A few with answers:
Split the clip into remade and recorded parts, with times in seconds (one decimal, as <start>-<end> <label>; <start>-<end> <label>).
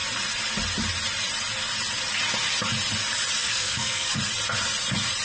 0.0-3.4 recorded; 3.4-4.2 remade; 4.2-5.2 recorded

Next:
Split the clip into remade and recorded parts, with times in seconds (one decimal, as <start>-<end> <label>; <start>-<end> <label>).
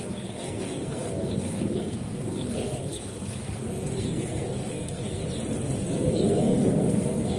0.0-5.2 remade; 5.2-5.8 recorded; 5.8-7.4 remade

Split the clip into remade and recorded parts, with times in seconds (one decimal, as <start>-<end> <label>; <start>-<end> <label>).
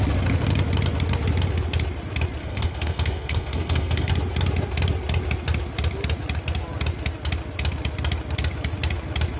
0.0-2.4 recorded; 2.4-4.1 remade; 4.1-9.4 recorded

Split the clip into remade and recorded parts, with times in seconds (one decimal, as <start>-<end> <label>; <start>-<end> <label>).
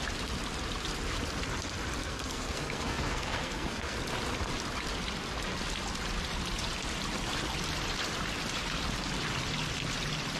0.0-2.0 recorded; 2.0-4.0 remade; 4.0-10.4 recorded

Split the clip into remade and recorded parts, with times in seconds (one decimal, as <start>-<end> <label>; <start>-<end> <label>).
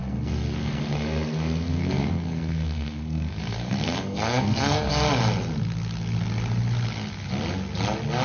0.0-4.9 remade; 4.9-8.2 recorded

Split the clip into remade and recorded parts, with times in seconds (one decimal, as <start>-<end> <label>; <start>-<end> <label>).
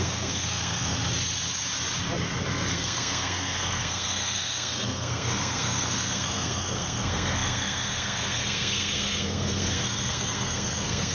0.0-0.9 remade; 0.9-2.7 recorded; 2.7-11.1 remade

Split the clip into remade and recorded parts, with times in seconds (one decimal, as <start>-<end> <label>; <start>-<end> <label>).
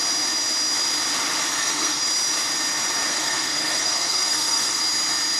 0.0-1.5 recorded; 1.5-2.0 remade; 2.0-3.1 recorded; 3.1-4.8 remade; 4.8-5.4 recorded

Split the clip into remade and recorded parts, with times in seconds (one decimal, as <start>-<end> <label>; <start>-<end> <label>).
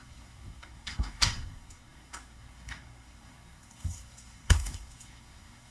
0.0-5.7 remade